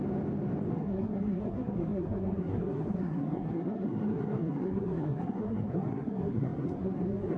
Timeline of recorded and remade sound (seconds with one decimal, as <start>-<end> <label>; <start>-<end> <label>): 0.0-0.7 recorded; 0.7-7.4 remade